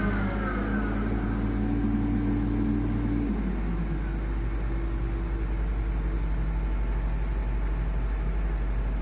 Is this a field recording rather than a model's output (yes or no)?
yes